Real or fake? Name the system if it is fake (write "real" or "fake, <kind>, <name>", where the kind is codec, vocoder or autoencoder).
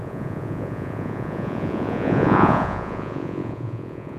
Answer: fake, vocoder, Vocos